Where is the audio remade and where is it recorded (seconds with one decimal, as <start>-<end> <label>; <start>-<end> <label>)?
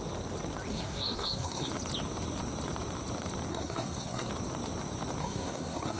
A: 0.0-0.7 recorded; 0.7-1.7 remade; 1.7-3.5 recorded; 3.5-4.3 remade; 4.3-5.2 recorded; 5.2-6.0 remade